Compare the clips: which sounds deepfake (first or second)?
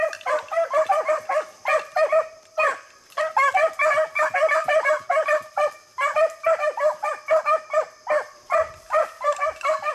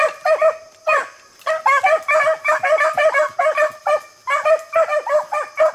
first